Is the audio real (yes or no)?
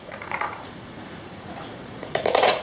no